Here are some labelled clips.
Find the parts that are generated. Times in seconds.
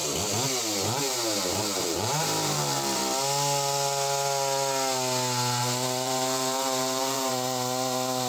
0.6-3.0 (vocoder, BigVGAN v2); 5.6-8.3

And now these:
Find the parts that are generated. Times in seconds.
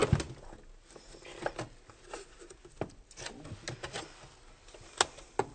none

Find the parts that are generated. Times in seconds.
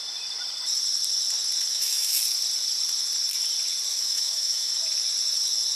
1.7-2.2 (autoencoder, DAC-VAE); 3.9-4.7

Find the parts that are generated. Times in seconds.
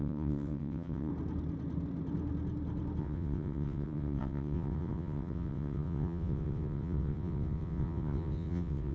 0.0-1.1 (vocoder, WaveNeXt); 3.0-8.9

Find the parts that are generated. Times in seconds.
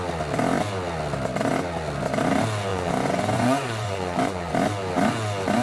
2.7-4.5 (vocoder, Vocos)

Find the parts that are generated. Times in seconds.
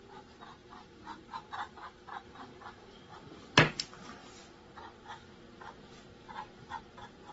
0.6-3.4 (vocoder, BigVGAN v2)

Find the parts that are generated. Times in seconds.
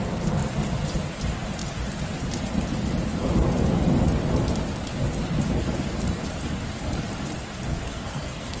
7.7-8.6 (codec, SNAC)